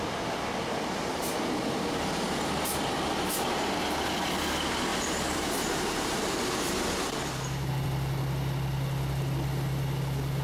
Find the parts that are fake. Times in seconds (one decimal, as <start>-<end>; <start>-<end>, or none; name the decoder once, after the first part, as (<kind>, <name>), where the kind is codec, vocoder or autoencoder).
4.9-7.7 (vocoder, BigVGAN v2)